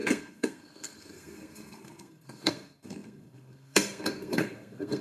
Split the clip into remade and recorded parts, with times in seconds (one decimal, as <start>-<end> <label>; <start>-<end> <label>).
0.0-5.0 remade